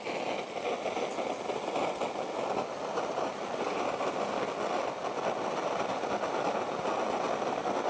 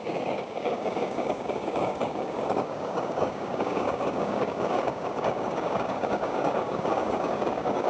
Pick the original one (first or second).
first